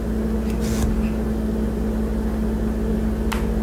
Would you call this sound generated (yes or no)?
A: no